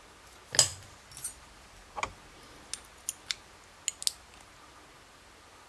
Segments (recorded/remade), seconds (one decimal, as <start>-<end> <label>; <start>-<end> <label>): 0.0-5.7 recorded